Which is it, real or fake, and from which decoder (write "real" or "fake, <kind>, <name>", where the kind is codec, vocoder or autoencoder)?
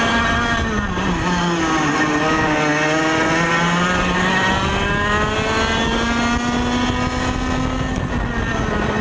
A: real